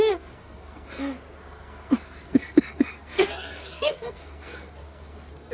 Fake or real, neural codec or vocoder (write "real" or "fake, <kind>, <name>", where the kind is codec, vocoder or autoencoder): fake, codec, SNAC